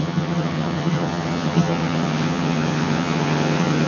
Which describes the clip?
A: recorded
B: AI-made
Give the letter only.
B